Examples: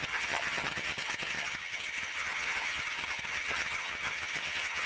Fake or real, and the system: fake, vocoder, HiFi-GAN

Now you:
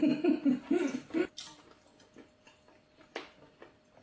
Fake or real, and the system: real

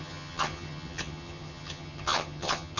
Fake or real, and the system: fake, vocoder, HiFi-GAN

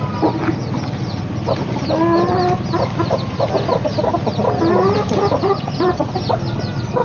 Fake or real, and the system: real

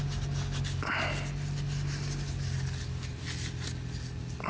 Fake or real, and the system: real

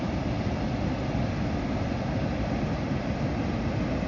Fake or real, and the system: real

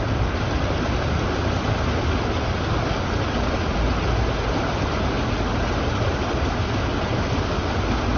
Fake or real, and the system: real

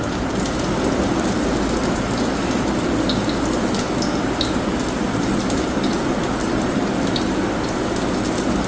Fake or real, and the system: real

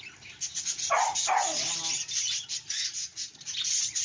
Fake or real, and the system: real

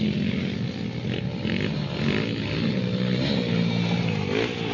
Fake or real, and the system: real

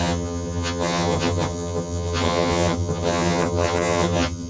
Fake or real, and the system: fake, vocoder, HiFi-GAN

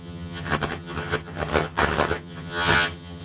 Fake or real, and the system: fake, vocoder, HiFi-GAN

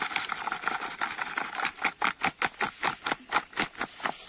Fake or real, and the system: real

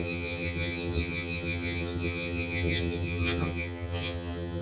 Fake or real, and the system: fake, vocoder, HiFi-GAN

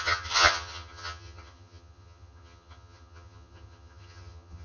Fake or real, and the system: fake, vocoder, HiFi-GAN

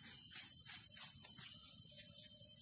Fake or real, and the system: real